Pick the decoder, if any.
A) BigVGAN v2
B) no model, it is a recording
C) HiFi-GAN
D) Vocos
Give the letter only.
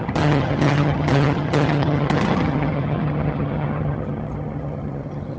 C